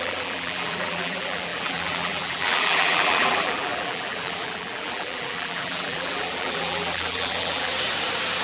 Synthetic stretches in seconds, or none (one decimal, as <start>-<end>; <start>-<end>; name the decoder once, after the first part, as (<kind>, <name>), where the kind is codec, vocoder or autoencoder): 0.0-7.7 (vocoder, BigVGAN v2)